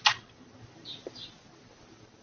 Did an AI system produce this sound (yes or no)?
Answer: no